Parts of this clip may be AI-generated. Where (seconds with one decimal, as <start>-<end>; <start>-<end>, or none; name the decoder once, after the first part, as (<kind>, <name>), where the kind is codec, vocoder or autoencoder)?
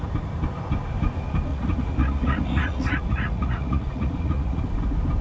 1.5-4.6 (vocoder, Vocos)